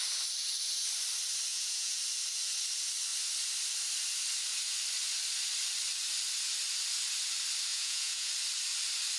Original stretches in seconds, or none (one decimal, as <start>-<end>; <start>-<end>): 0.0-1.5; 2.0-7.7; 8.3-9.2